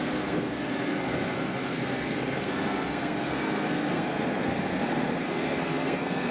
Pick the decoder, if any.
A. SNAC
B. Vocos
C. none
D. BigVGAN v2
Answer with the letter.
A